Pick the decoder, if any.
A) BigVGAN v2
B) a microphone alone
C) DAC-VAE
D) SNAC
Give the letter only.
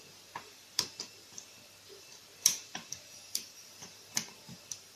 A